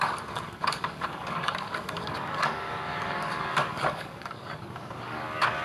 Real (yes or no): no